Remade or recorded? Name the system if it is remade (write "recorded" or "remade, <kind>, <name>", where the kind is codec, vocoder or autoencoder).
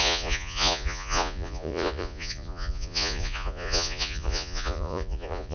remade, vocoder, Vocos